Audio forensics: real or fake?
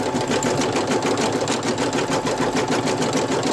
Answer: real